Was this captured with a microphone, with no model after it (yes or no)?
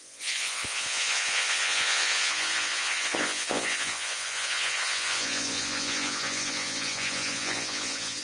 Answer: no